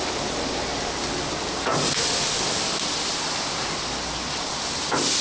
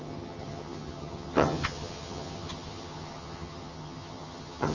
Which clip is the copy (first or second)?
second